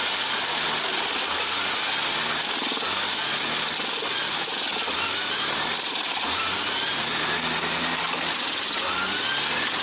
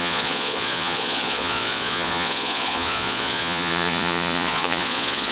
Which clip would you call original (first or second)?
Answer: first